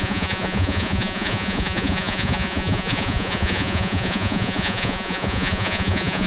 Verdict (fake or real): fake